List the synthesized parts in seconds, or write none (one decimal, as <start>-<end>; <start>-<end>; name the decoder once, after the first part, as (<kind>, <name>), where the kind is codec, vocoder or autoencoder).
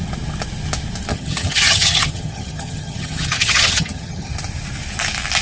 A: 1.1-4.3 (vocoder, HiFi-GAN)